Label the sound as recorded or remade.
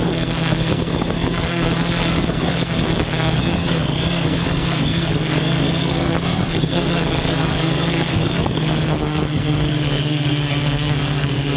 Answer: remade